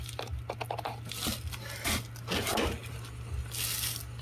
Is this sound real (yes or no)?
yes